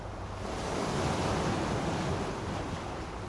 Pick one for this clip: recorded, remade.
recorded